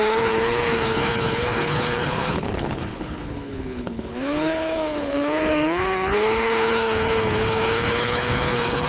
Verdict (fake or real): fake